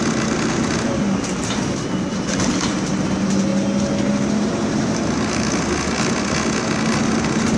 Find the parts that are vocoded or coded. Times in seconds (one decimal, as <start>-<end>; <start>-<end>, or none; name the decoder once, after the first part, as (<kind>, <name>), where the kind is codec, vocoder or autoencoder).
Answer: none